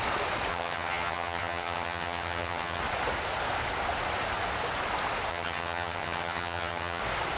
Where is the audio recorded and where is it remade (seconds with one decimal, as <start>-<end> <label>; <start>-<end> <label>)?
0.0-0.5 recorded; 0.5-2.8 remade; 2.8-5.3 recorded; 5.3-7.0 remade; 7.0-7.4 recorded